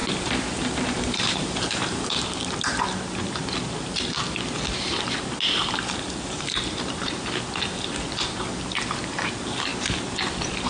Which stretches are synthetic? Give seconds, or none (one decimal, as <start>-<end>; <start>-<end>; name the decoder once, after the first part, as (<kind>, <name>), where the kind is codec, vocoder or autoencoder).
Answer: 0.0-2.1 (vocoder, BigVGAN v2); 5.6-6.4